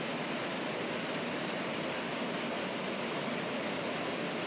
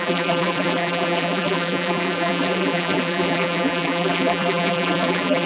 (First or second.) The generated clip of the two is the second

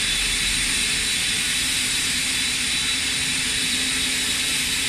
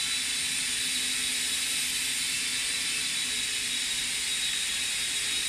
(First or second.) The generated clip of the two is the first